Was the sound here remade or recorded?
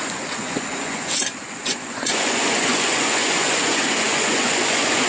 remade